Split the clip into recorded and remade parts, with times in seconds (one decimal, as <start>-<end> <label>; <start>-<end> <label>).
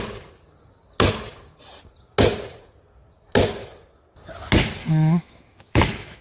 0.0-4.8 recorded; 4.8-6.2 remade